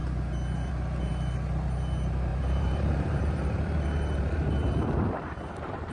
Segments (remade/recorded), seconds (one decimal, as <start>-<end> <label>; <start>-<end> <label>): 0.0-2.3 recorded; 2.3-5.9 remade